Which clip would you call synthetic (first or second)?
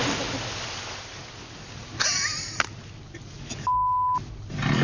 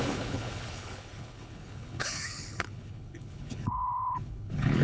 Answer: second